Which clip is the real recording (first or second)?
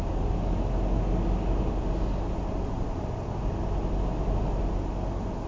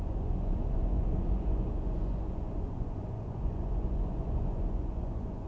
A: first